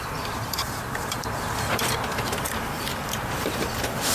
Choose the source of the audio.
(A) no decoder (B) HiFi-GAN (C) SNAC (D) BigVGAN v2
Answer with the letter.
D